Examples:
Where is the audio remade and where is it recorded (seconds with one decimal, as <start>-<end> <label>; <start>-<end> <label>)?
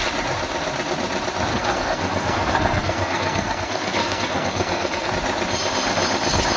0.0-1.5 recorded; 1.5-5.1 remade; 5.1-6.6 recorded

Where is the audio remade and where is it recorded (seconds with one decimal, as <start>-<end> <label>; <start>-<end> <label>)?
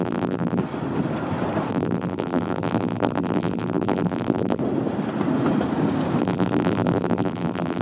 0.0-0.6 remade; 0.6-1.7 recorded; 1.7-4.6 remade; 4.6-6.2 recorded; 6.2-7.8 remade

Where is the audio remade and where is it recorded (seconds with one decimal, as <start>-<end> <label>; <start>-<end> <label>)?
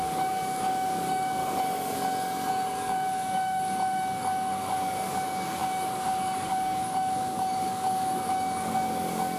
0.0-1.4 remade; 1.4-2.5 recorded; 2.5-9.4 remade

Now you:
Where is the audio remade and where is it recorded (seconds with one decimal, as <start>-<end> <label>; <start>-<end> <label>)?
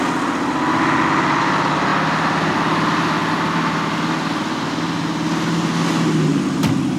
0.0-7.0 recorded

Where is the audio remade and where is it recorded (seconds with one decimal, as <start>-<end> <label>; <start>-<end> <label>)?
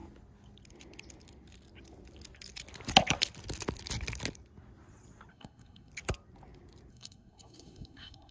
0.0-5.3 recorded; 5.3-5.9 remade; 5.9-6.9 recorded; 6.9-8.3 remade